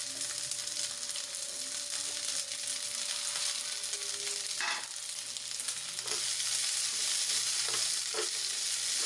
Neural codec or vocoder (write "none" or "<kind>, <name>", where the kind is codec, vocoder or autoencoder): none